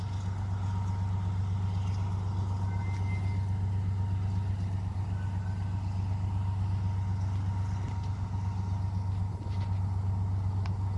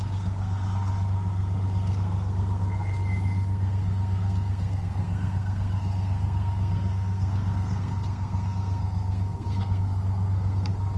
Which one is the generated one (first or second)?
second